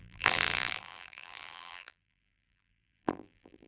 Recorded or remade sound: remade